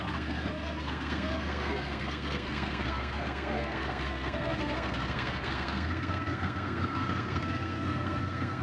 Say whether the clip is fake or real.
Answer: fake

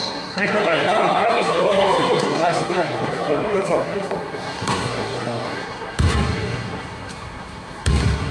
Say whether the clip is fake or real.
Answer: fake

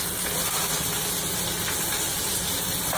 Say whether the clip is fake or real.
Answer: real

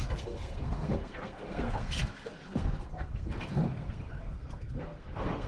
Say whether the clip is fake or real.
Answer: fake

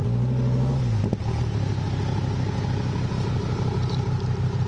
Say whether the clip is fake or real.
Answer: real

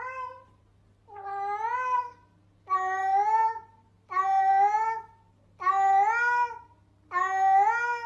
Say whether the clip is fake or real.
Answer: real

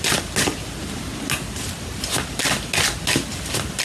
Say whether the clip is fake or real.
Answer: real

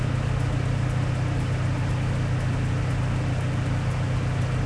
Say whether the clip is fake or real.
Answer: real